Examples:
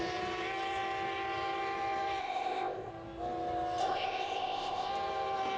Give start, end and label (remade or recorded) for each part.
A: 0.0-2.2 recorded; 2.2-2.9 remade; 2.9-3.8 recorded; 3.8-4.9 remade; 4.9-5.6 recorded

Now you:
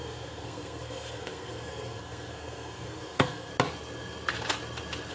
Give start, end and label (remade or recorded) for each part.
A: 0.0-3.5 remade; 3.5-5.1 recorded

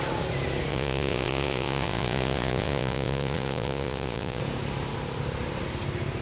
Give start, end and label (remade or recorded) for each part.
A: 0.0-0.7 recorded; 0.7-4.4 remade; 4.4-6.2 recorded

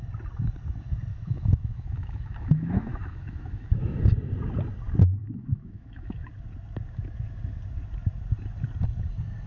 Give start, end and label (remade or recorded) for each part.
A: 0.0-1.1 recorded; 1.1-4.0 remade; 4.0-5.2 recorded; 5.2-6.3 remade; 6.3-9.5 recorded

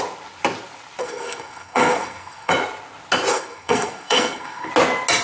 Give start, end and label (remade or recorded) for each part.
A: 0.0-1.0 recorded; 1.0-2.5 remade; 2.5-3.3 recorded; 3.3-4.7 remade; 4.7-5.2 recorded

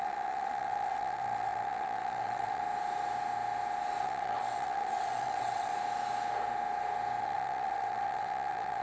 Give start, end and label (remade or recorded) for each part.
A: 0.0-2.6 remade; 2.6-4.0 recorded; 4.0-5.7 remade; 5.7-7.2 recorded; 7.2-8.8 remade

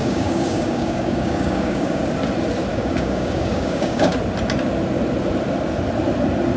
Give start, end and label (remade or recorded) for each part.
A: 0.0-2.0 remade; 2.0-2.7 recorded; 2.7-4.1 remade; 4.1-6.6 recorded